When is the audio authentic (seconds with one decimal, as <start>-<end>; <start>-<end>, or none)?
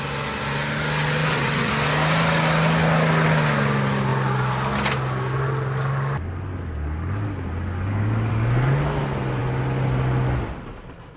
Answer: 0.0-1.2; 1.7-11.2